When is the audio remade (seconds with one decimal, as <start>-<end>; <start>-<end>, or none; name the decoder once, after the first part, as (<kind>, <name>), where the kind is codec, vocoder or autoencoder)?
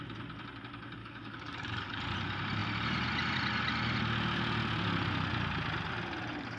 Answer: 1.0-2.0 (codec, DAC)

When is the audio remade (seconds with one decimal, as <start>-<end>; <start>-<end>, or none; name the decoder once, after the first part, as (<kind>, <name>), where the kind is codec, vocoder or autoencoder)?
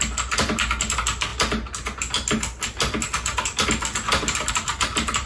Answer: none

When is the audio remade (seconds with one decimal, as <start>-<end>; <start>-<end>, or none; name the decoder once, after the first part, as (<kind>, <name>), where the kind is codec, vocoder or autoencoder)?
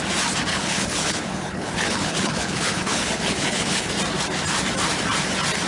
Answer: 0.5-3.9 (codec, HILCodec)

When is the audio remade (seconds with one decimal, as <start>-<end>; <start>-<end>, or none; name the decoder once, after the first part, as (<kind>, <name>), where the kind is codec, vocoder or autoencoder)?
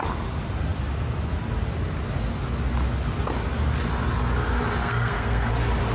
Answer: 4.8-5.5 (codec, SNAC)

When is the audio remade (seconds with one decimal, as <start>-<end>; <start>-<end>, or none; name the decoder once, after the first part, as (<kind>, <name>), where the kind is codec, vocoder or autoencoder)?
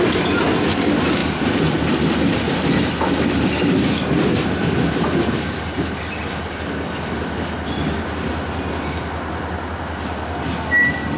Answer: none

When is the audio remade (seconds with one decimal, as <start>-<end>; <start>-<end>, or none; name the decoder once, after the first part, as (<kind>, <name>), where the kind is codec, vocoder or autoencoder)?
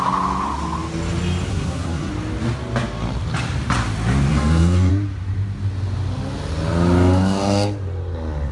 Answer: 1.5-2.1 (codec, SNAC); 4.3-4.9